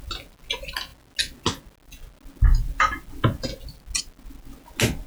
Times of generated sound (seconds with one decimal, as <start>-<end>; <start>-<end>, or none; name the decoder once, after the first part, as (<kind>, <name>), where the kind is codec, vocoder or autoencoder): none